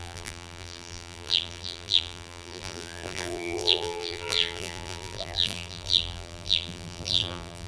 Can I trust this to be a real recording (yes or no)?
no